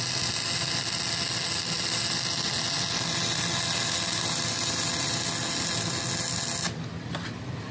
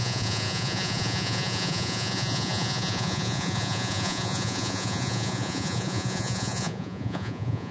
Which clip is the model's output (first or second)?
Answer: second